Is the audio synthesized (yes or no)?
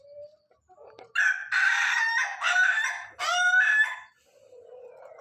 no